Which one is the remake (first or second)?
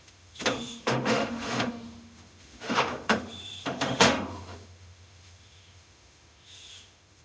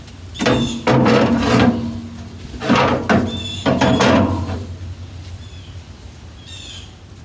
first